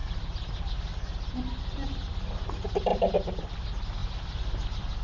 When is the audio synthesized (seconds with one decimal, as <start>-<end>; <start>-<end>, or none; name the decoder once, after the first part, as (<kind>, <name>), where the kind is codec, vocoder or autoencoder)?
none